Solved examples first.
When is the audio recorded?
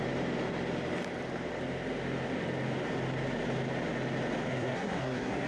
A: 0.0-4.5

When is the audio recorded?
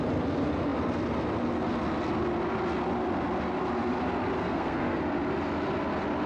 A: 0.0-4.4; 5.0-6.3